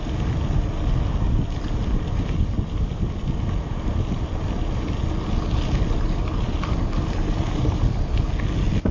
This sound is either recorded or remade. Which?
recorded